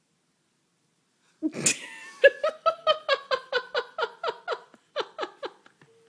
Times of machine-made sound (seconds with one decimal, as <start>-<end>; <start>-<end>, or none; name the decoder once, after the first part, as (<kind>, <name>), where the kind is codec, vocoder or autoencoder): none